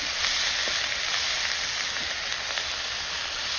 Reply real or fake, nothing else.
real